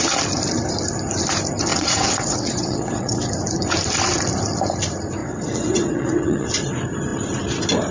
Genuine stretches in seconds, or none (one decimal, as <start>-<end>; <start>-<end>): 0.0-1.7; 3.3-5.2; 6.5-7.9